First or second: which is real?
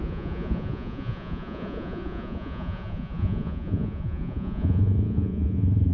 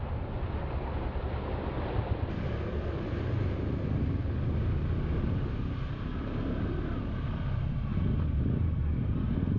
second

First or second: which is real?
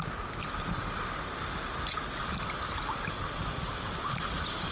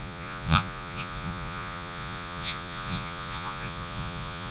first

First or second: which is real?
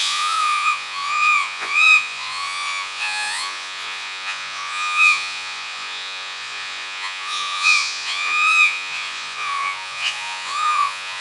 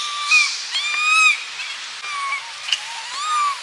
second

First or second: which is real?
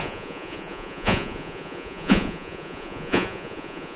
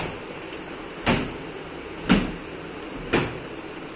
second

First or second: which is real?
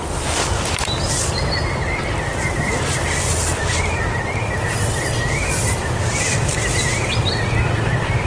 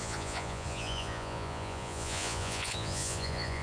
first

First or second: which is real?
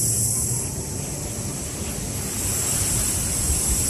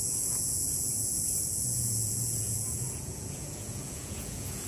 first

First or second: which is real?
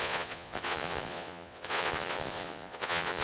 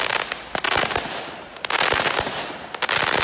second